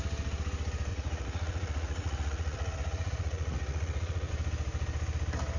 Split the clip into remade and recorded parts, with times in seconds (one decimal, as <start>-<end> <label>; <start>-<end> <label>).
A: 0.0-0.9 recorded; 0.9-4.3 remade; 4.3-5.6 recorded